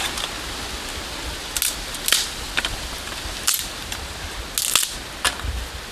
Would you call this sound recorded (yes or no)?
yes